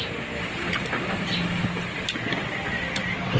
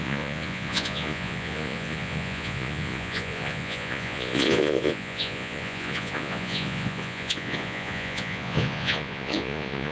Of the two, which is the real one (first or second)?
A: first